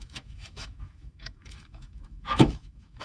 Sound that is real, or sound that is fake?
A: fake